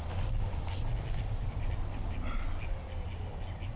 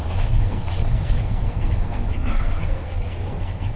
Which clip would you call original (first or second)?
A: first